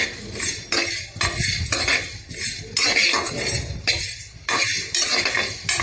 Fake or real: real